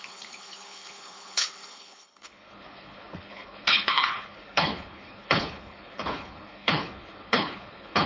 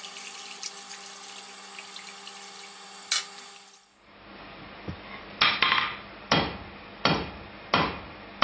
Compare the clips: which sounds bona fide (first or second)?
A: second